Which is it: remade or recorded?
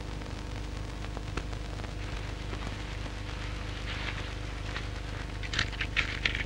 recorded